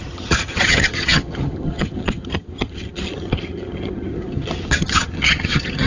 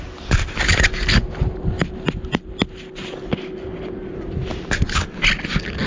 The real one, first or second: second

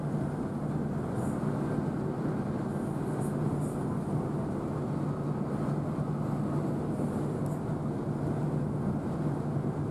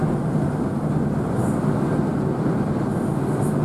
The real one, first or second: first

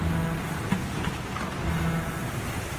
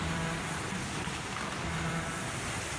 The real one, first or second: first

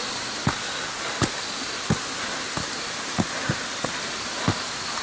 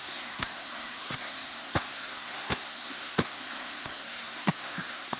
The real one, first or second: first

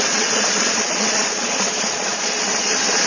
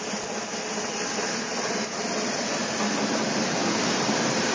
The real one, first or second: second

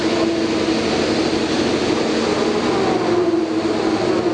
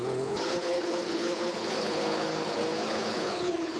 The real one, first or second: first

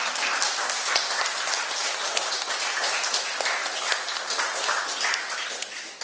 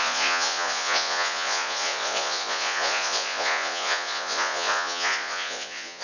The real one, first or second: first